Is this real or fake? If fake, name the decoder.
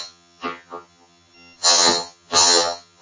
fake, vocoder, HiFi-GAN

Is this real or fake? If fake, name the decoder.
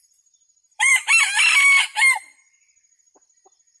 fake, vocoder, BigVGAN v2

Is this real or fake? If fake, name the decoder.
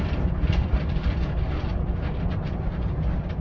real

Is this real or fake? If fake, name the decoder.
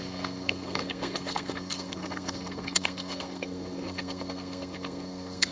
fake, codec, SNAC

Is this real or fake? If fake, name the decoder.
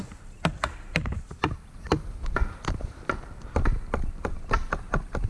real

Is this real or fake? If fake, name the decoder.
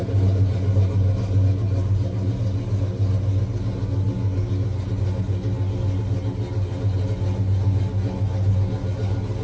real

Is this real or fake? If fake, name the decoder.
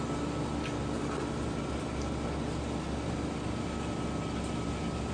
real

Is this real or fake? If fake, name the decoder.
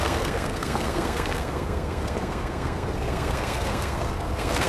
fake, codec, SNAC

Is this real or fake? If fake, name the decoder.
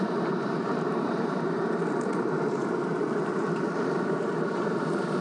fake, vocoder, BigVGAN v2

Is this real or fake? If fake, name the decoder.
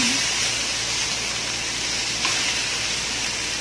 real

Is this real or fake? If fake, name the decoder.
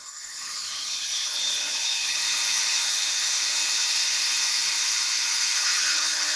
fake, codec, HILCodec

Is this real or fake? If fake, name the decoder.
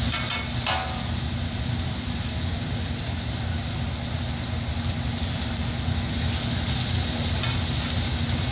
real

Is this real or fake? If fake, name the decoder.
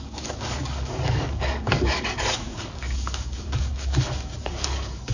fake, codec, DAC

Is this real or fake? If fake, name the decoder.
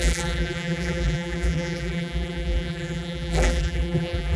fake, vocoder, BigVGAN v2